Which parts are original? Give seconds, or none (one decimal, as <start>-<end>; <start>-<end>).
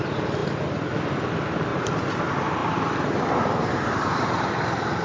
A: 0.0-1.7; 2.2-2.6; 4.5-5.0